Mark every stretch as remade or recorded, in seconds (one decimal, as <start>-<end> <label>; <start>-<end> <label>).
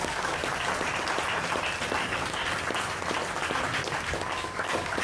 0.0-0.4 remade; 0.4-2.0 recorded; 2.0-2.4 remade; 2.4-4.1 recorded; 4.1-5.0 remade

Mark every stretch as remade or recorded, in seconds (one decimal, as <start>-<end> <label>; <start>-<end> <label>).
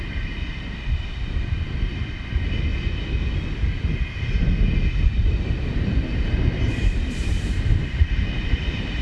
0.0-2.7 remade; 2.7-6.4 recorded; 6.4-9.0 remade